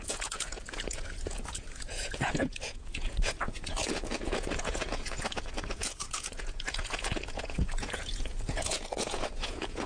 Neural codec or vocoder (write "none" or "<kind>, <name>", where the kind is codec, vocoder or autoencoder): vocoder, Vocos